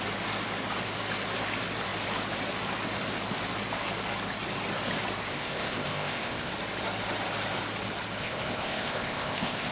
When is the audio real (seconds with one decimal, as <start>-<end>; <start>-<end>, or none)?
0.0-5.3; 6.5-8.2